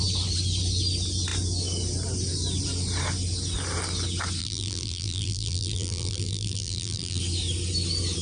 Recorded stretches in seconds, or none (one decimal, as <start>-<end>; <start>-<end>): 0.0-4.4; 7.2-8.2